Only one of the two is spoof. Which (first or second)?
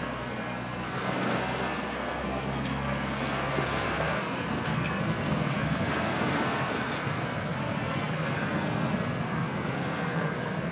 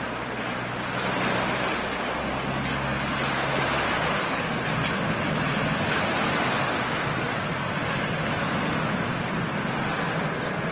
first